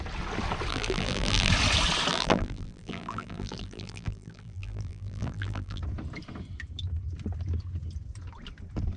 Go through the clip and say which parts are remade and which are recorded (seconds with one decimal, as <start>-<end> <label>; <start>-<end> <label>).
0.0-0.7 recorded; 0.7-1.5 remade; 1.5-2.1 recorded; 2.1-5.8 remade; 5.8-9.0 recorded